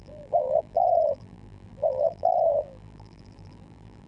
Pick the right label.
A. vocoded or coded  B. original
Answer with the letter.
A